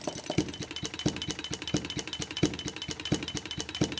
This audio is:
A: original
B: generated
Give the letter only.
A